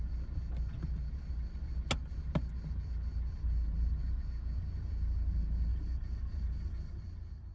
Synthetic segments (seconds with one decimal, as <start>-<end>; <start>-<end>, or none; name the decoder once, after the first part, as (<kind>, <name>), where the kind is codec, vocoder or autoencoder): 5.7-7.5 (vocoder, BigVGAN v2)